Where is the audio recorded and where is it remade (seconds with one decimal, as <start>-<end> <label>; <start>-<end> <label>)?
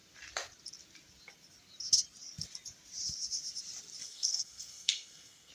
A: 0.0-4.0 recorded; 4.0-5.5 remade